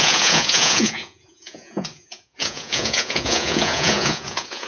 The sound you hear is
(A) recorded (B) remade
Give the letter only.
B